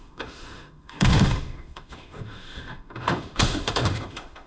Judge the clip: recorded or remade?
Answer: remade